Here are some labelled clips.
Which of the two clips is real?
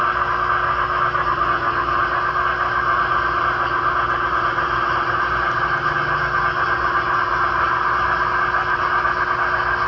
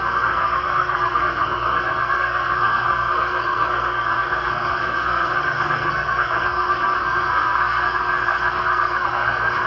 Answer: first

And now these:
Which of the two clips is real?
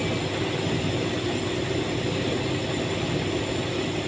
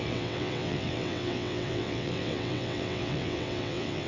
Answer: first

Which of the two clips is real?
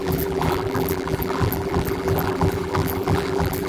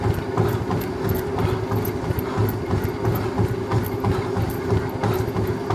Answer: second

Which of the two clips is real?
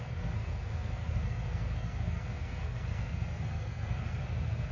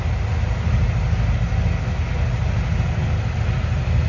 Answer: second